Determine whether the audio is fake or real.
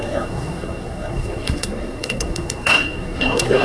fake